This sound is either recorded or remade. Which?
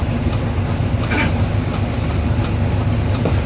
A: recorded